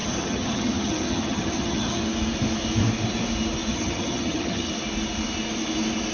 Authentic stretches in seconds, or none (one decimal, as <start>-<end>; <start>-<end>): 2.0-3.7; 4.7-6.1